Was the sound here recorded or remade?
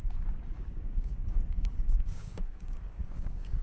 remade